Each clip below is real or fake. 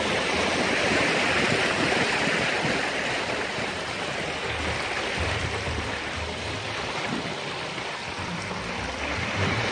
fake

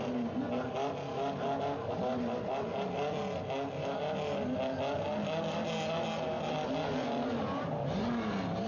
real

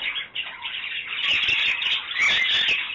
real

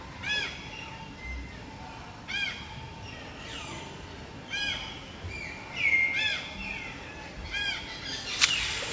real